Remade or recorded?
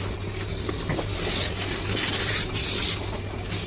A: recorded